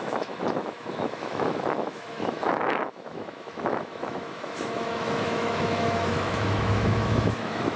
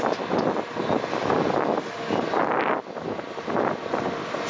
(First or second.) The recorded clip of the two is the second